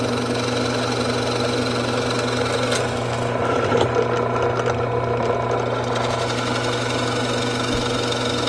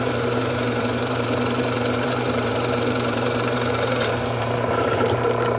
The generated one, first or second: second